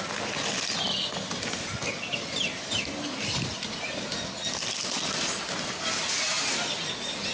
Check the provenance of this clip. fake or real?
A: real